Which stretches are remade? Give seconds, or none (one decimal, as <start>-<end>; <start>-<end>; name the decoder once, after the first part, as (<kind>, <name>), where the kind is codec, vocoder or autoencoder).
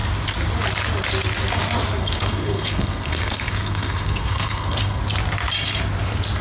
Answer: 2.0-5.0 (codec, SNAC)